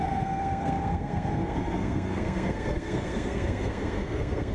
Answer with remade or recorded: remade